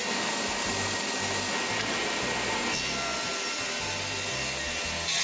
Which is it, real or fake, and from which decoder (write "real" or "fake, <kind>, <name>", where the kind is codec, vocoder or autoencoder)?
real